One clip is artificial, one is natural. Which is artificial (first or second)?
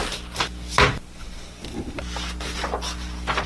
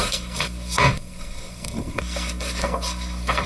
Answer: second